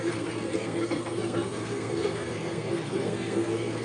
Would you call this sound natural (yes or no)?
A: no